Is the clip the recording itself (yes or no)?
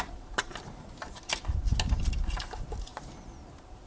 yes